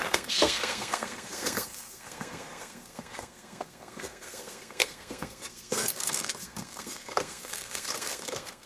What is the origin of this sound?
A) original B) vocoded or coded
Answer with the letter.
B